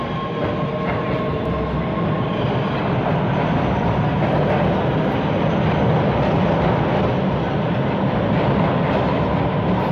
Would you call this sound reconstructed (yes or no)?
no